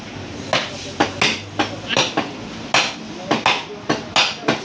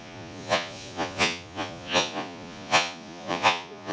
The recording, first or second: first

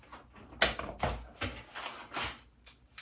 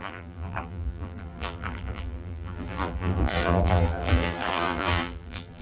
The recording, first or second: first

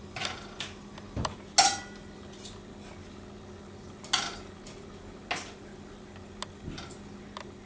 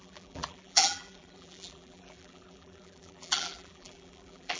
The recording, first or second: first